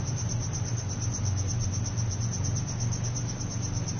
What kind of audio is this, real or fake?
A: real